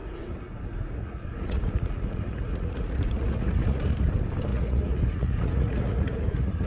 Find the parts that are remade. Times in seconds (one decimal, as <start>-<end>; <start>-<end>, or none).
0.0-3.8; 4.5-6.7